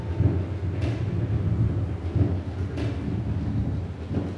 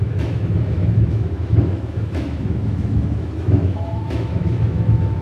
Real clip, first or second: first